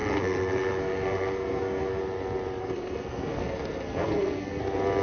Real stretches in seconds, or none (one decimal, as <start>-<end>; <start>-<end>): 2.0-2.6; 4.6-5.0